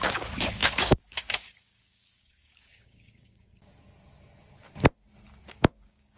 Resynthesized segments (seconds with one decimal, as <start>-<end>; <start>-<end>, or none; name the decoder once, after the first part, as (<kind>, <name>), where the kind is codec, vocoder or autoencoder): 0.0-3.5 (codec, DAC); 5.4-6.2